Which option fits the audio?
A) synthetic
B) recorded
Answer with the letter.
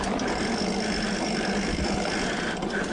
A